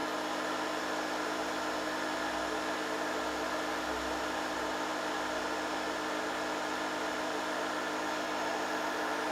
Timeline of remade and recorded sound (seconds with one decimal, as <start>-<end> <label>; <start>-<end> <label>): 0.0-9.3 recorded